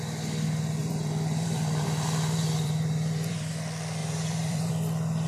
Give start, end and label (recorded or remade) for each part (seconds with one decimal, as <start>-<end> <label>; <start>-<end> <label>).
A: 0.0-0.8 recorded; 0.8-3.5 remade; 3.5-4.0 recorded; 4.0-4.7 remade; 4.7-5.3 recorded